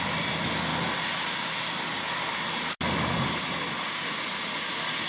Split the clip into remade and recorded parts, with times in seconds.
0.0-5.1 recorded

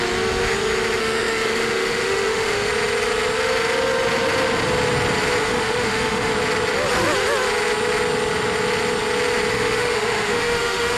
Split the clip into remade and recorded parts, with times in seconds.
0.0-1.0 recorded; 1.0-2.7 remade; 2.7-5.4 recorded; 5.4-6.3 remade; 6.3-9.5 recorded; 9.5-11.0 remade

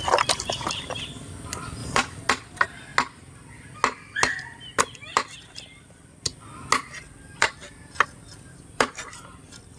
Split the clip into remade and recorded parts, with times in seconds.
0.0-2.9 remade; 2.9-4.8 recorded; 4.8-6.3 remade; 6.3-6.8 recorded; 6.8-9.8 remade

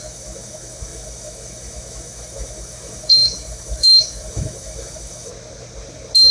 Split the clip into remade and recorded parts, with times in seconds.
0.0-5.3 remade; 5.3-6.3 recorded